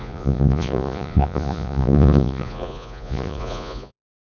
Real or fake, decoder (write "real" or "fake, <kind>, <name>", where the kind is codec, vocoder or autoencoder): fake, vocoder, Vocos